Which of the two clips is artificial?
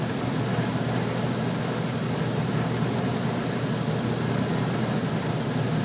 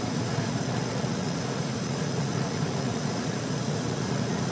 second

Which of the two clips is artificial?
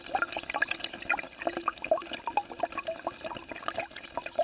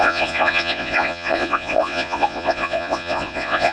second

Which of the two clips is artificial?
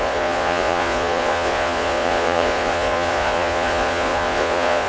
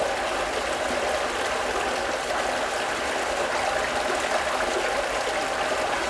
first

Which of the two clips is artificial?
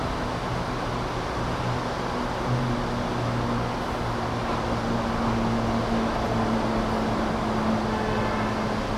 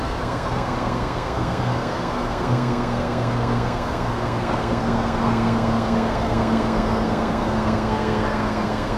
second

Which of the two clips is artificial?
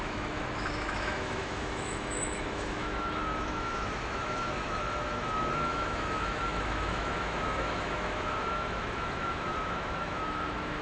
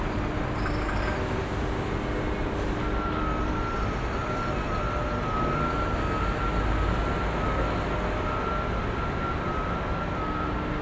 first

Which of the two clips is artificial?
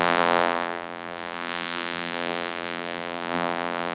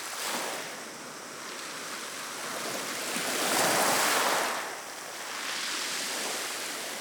first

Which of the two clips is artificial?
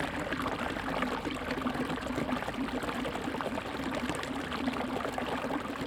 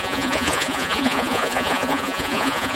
second